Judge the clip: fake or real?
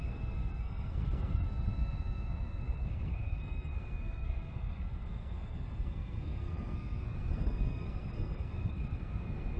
fake